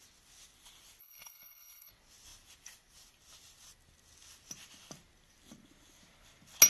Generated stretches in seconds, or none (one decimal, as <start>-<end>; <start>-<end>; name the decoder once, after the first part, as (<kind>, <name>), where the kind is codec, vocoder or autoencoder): 1.0-1.9 (codec, HILCodec)